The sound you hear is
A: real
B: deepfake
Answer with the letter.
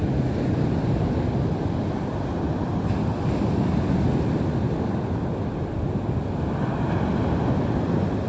A